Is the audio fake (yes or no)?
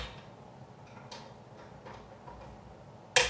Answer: no